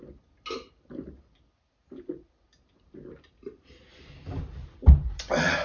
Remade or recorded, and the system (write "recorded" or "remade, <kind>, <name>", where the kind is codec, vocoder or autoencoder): recorded